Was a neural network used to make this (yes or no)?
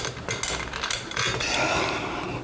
no